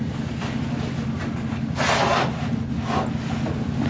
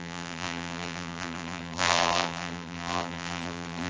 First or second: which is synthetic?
second